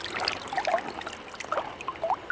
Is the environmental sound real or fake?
real